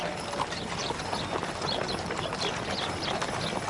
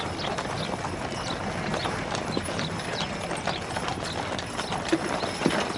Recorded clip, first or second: second